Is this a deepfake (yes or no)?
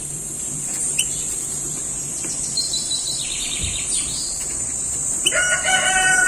yes